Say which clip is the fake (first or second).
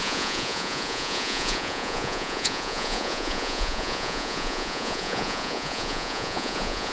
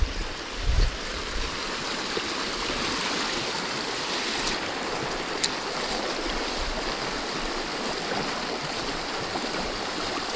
first